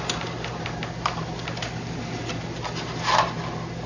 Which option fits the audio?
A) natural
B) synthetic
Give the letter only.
A